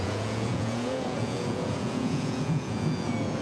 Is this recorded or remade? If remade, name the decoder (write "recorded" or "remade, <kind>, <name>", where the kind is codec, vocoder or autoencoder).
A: remade, vocoder, Vocos